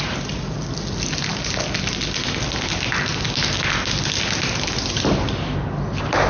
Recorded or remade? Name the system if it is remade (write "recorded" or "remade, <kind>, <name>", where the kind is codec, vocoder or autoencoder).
recorded